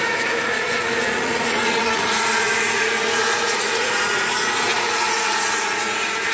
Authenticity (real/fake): fake